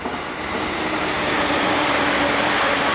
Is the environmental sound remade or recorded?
recorded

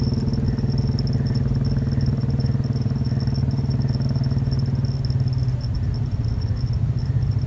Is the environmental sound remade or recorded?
recorded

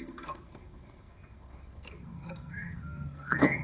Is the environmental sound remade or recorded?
remade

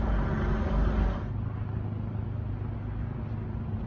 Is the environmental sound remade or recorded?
recorded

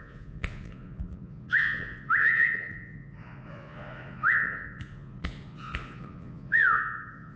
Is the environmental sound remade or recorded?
remade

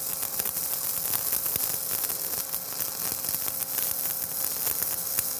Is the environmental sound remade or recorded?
recorded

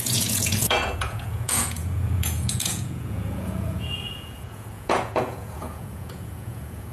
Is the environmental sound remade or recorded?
remade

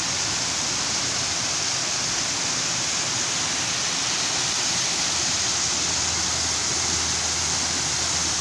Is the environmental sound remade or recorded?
recorded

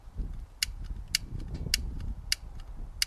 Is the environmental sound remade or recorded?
recorded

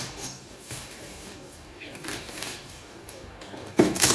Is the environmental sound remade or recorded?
remade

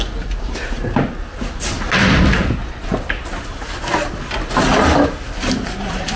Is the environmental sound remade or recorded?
recorded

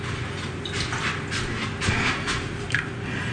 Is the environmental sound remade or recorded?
recorded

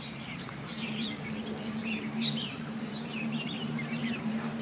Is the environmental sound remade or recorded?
remade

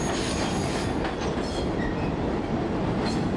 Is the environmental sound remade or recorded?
recorded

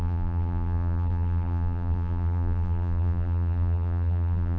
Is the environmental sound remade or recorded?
remade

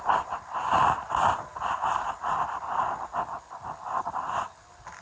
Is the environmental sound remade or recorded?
recorded